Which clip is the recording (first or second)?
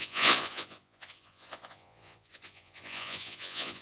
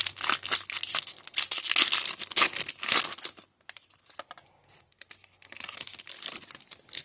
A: second